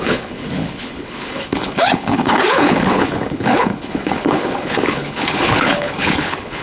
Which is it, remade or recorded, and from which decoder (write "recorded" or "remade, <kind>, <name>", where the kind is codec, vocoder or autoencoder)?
remade, codec, HILCodec